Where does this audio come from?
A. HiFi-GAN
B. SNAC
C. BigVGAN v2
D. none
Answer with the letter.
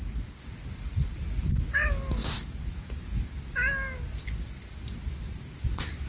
D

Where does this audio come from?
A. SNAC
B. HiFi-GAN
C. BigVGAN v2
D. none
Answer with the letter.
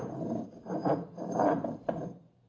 D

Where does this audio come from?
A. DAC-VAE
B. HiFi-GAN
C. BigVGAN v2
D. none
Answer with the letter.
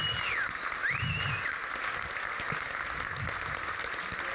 D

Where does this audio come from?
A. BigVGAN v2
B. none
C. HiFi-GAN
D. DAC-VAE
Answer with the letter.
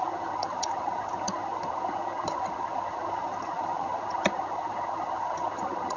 C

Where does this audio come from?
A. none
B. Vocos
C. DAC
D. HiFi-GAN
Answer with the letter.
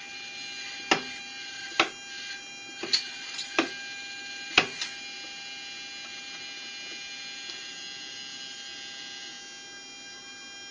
A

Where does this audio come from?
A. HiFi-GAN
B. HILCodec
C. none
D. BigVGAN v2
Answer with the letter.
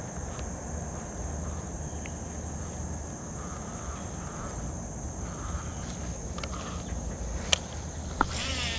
C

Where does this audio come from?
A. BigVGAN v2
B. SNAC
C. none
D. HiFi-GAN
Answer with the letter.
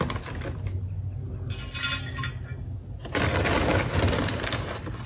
C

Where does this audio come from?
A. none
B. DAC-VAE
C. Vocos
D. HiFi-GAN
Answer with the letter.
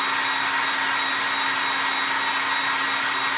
A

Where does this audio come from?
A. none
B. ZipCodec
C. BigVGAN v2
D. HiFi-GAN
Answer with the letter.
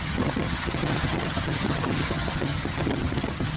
D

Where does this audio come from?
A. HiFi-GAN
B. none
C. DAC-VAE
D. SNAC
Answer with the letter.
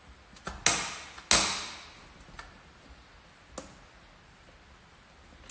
B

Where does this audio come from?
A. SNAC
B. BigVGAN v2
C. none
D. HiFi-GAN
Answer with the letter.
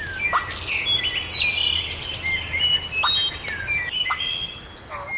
C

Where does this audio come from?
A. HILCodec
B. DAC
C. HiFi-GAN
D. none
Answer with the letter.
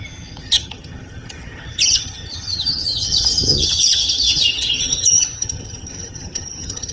C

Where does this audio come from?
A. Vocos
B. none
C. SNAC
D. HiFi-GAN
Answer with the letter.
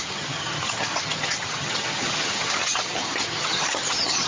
D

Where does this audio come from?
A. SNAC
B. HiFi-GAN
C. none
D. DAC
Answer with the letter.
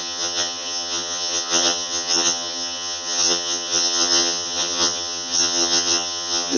B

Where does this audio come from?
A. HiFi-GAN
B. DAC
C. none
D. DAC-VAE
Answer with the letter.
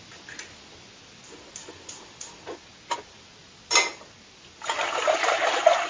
C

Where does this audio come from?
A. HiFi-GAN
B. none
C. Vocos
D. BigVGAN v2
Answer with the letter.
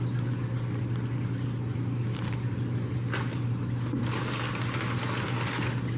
B